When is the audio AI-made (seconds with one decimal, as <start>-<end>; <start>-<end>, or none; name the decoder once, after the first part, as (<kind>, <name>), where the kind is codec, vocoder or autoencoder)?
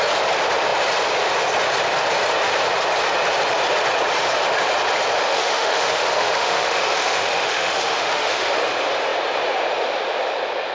5.3-8.6 (autoencoder, DAC-VAE)